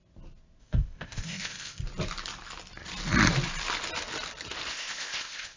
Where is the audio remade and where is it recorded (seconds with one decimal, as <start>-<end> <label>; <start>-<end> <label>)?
0.0-0.6 recorded; 0.6-1.8 remade; 1.8-4.7 recorded; 4.7-5.6 remade